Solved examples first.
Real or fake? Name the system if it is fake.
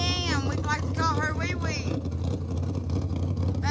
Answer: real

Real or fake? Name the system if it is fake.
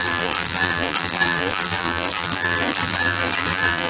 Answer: fake, vocoder, BigVGAN v2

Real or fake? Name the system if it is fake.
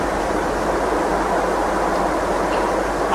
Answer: real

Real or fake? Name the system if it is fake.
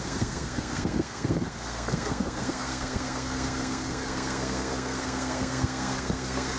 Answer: fake, codec, SNAC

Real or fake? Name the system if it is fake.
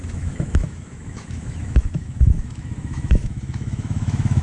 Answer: fake, autoencoder, DAC-VAE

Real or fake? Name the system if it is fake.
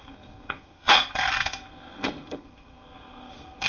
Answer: fake, codec, SNAC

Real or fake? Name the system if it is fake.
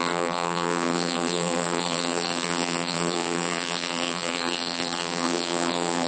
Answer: fake, vocoder, BigVGAN v2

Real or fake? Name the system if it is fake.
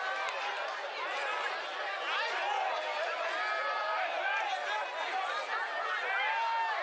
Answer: real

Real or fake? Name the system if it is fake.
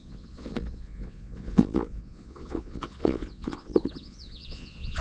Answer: fake, vocoder, Vocos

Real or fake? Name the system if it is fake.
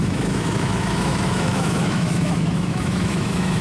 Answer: fake, autoencoder, DAC-VAE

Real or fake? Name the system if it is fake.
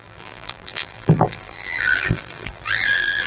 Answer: fake, vocoder, BigVGAN v2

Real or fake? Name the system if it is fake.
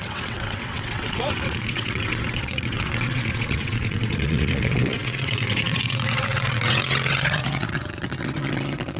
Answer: fake, vocoder, WaveNeXt